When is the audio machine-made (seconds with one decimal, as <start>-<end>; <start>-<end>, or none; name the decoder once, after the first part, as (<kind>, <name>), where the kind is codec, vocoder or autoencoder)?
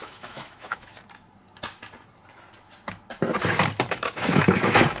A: 0.0-0.9 (autoencoder, DAC-VAE); 3.9-5.0